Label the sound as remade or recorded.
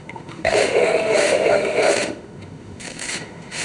remade